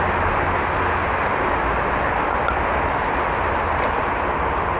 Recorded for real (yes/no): yes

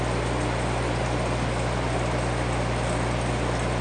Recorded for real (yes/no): yes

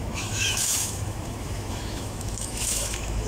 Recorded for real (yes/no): no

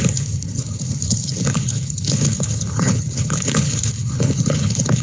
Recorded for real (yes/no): no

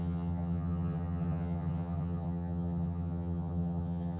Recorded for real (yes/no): no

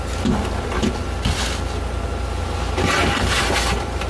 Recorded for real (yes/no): no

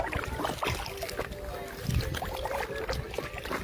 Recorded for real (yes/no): yes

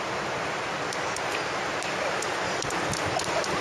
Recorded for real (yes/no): yes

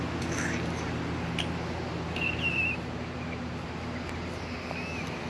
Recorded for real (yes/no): yes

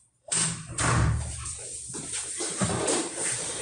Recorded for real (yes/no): no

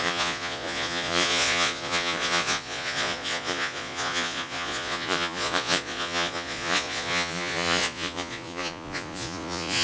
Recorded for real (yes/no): no